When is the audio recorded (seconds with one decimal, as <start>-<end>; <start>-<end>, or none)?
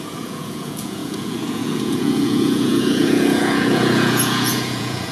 none